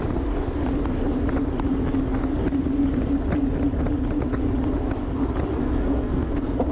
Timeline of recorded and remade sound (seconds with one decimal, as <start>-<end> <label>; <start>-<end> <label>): 0.0-5.6 recorded; 5.6-6.3 remade; 6.3-6.7 recorded